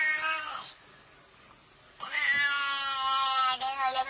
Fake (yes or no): no